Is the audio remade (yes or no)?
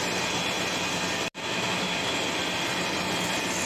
no